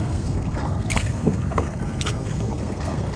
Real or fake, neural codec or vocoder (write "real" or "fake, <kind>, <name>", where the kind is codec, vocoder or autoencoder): fake, codec, SNAC